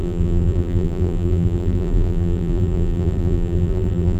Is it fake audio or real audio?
fake